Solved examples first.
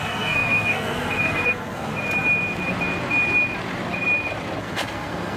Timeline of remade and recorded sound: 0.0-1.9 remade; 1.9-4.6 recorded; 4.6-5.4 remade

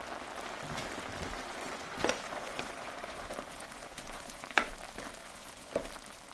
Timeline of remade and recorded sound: 0.0-1.3 recorded; 1.3-4.7 remade; 4.7-5.2 recorded; 5.2-5.7 remade; 5.7-6.3 recorded

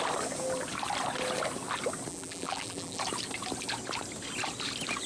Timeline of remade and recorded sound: 0.0-2.1 recorded; 2.1-3.0 remade; 3.0-5.1 recorded